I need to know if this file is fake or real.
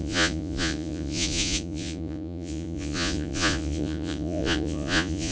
fake